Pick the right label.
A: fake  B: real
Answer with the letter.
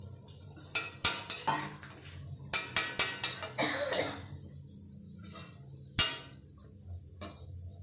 B